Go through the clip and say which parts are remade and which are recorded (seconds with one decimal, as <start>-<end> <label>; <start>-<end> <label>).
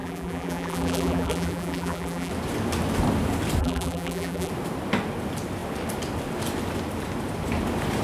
0.0-2.3 remade; 2.3-3.6 recorded; 3.6-4.5 remade; 4.5-8.0 recorded